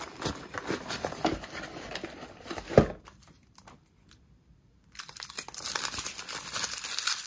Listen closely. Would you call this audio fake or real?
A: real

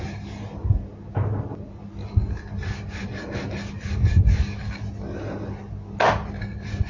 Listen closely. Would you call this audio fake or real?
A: real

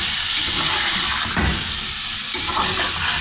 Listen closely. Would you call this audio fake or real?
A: real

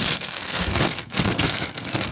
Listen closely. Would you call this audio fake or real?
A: fake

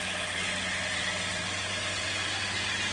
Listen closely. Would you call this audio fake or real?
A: real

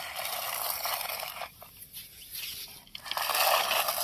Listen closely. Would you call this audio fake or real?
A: real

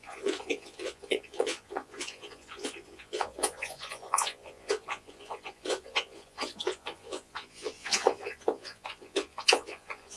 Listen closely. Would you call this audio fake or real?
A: fake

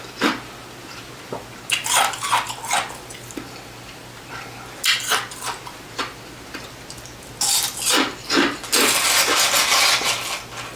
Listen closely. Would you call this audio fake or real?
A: real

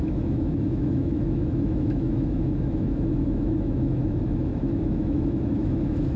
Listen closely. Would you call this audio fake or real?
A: fake